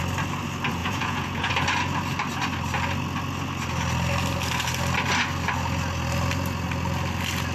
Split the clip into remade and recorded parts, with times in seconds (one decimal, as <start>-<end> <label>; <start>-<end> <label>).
0.0-0.8 recorded; 0.8-1.5 remade; 1.5-7.5 recorded